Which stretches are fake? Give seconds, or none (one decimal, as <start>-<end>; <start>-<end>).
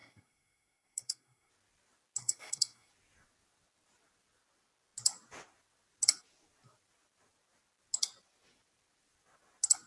0.0-1.5; 2.2-2.9